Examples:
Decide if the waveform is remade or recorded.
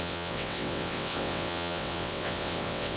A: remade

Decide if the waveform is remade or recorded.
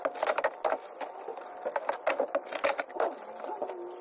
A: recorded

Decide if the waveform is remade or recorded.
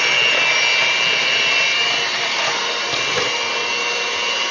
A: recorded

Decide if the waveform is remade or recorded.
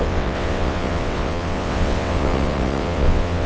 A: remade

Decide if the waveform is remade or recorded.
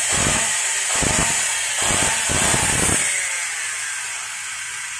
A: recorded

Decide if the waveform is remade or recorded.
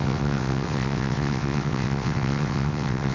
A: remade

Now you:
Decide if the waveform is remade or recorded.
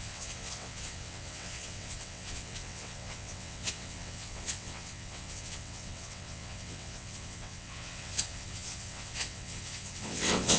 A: remade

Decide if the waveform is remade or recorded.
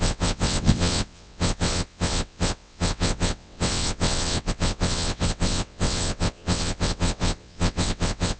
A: remade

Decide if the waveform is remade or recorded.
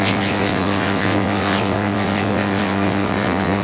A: remade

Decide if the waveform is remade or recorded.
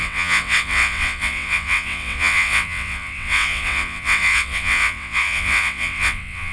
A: remade